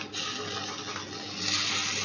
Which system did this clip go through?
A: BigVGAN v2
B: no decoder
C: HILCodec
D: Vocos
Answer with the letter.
B